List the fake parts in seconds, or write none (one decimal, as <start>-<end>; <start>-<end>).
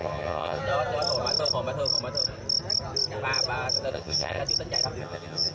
0.0-0.6; 3.9-4.4; 5.0-5.5